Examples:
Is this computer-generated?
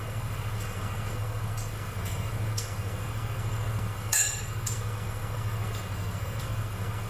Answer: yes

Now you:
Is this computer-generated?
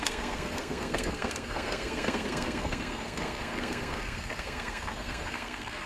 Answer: yes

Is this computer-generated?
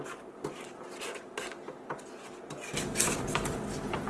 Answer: no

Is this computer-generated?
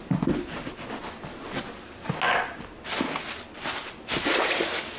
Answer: no